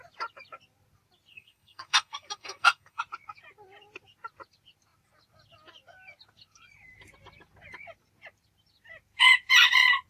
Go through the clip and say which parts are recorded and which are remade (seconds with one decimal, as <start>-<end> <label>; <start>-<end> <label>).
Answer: 0.0-1.3 recorded; 1.3-3.0 remade; 3.0-10.1 recorded

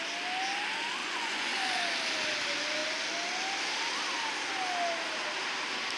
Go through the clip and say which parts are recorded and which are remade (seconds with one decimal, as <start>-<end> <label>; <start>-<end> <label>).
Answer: 0.0-1.0 recorded; 1.0-1.8 remade; 1.8-6.0 recorded